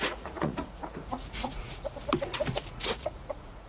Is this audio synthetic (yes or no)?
yes